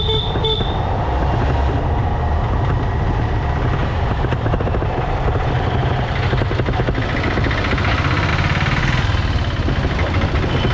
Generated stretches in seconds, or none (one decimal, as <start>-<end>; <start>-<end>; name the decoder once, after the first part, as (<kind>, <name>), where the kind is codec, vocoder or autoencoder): 3.8-6.5 (vocoder, BigVGAN v2)